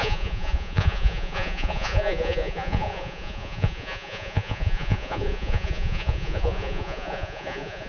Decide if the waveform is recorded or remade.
remade